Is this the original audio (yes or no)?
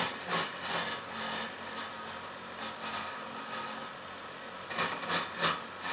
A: yes